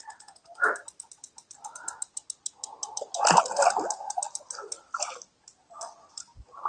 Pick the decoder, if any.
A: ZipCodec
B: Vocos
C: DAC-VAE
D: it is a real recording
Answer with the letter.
D